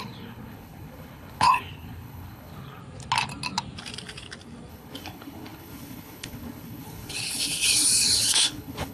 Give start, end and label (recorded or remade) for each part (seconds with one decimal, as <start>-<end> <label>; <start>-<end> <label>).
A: 0.0-2.8 remade; 2.8-4.7 recorded; 4.7-8.9 remade